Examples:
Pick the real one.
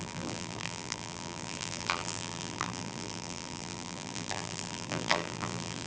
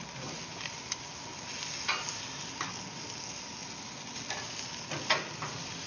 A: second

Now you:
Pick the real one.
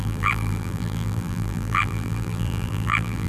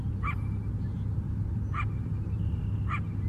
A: second